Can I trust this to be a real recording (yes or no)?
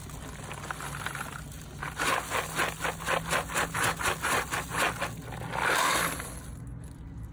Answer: yes